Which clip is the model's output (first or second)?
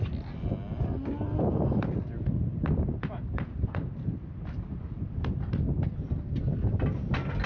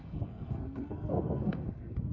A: second